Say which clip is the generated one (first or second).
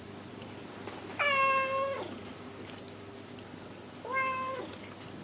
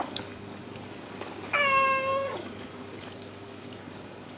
second